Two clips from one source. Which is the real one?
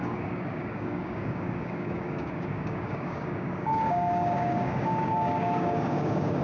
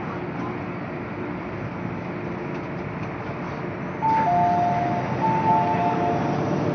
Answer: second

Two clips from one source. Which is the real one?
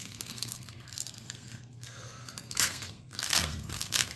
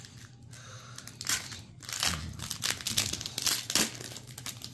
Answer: second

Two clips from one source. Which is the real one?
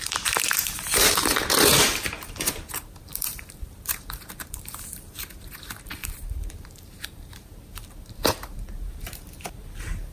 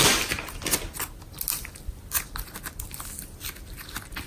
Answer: second